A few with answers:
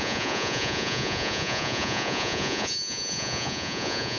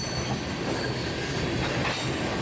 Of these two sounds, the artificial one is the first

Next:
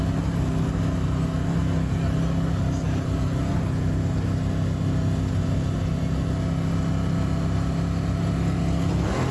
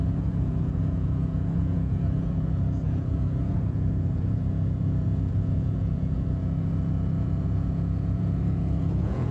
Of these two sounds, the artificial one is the second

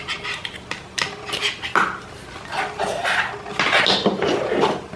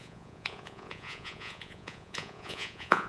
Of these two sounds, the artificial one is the second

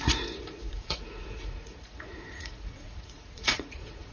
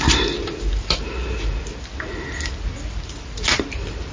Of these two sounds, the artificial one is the first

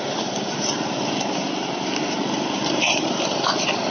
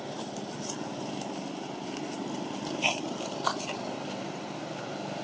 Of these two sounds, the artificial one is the first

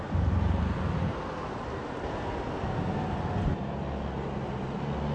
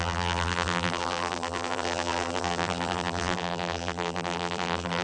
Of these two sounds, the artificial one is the second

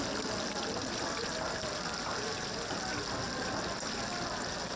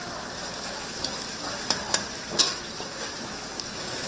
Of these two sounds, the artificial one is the second